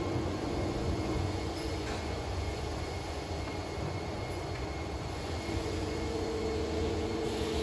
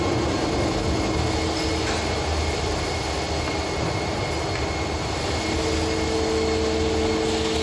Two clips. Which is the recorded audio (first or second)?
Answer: second